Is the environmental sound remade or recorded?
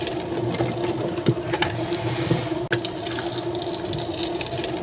recorded